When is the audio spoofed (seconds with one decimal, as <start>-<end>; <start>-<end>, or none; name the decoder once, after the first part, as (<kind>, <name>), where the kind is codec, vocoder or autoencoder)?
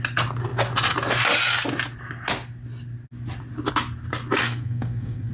4.4-5.3 (codec, SNAC)